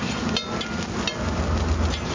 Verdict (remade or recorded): recorded